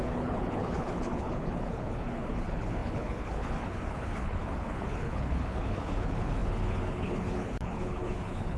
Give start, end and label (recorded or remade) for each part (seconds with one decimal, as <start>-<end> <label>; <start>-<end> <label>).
0.0-8.6 remade